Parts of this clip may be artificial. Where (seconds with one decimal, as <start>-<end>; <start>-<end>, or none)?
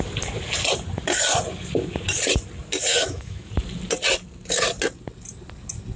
2.9-3.5